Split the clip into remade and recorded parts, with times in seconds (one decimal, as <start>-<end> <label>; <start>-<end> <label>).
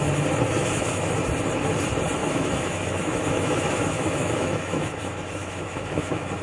0.0-0.6 recorded; 0.6-1.1 remade; 1.1-2.2 recorded; 2.2-5.0 remade; 5.0-5.4 recorded; 5.4-6.4 remade